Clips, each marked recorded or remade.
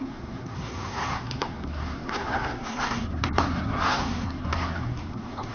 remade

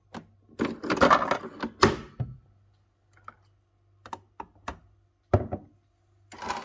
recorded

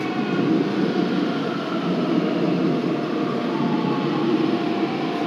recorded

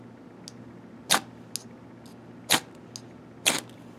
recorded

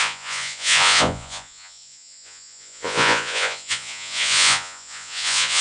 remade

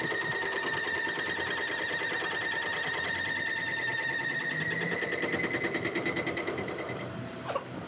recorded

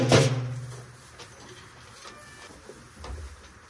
recorded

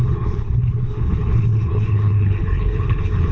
remade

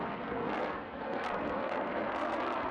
remade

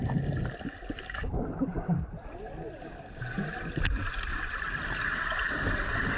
recorded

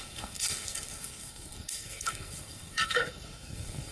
remade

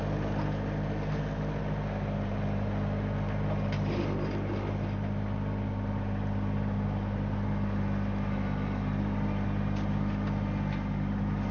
recorded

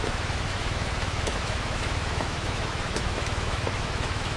remade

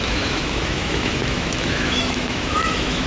remade